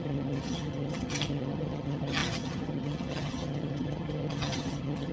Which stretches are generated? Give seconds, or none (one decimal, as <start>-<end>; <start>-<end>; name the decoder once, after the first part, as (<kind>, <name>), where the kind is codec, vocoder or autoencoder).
0.0-5.1 (vocoder, HiFi-GAN)